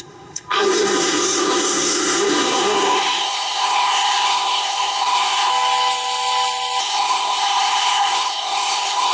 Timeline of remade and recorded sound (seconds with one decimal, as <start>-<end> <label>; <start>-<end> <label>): 0.0-5.5 remade; 5.5-6.8 recorded; 6.8-9.1 remade